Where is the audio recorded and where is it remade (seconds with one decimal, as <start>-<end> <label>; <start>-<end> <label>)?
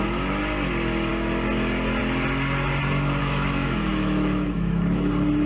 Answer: 0.0-3.2 recorded; 3.2-5.1 remade; 5.1-5.5 recorded